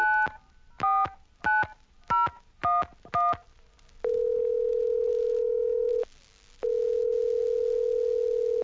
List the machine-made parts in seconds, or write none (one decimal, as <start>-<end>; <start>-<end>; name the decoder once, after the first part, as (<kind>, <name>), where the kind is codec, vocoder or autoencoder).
5.1-5.9 (autoencoder, DAC-VAE)